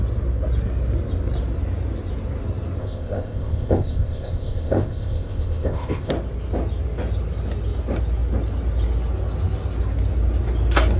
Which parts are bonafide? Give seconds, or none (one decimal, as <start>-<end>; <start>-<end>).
0.0-2.8; 6.1-11.0